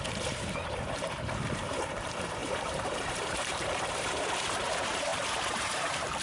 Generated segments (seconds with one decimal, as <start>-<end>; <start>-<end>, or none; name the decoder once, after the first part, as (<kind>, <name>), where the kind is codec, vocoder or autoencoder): 0.0-6.2 (vocoder, BigVGAN v2)